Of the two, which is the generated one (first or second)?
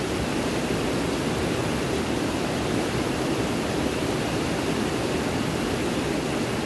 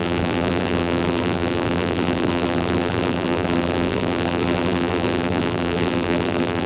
second